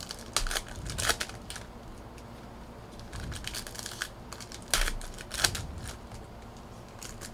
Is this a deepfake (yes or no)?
no